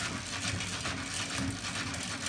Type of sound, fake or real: real